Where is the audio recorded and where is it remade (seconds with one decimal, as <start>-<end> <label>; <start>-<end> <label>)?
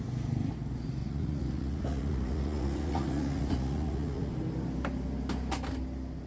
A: 0.0-1.0 recorded; 1.0-4.3 remade; 4.3-6.3 recorded